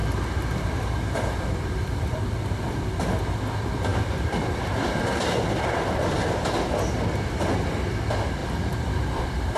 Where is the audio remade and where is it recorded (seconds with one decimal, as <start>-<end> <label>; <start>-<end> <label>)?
0.0-2.8 remade; 2.8-3.9 recorded; 3.9-5.0 remade; 5.0-8.4 recorded; 8.4-9.6 remade